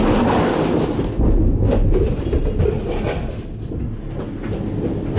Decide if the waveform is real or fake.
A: real